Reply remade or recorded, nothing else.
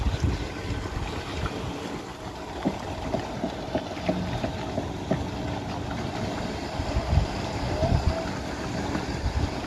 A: recorded